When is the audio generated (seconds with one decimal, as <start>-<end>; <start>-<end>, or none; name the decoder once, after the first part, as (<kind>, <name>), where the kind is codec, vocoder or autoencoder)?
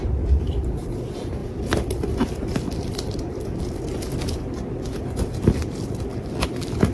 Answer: 1.4-4.6 (vocoder, BigVGAN v2)